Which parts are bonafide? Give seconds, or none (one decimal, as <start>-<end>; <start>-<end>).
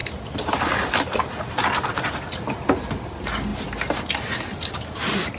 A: 0.0-5.4